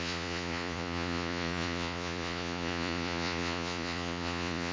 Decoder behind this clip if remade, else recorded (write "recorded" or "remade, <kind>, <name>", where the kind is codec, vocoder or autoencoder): remade, vocoder, Vocos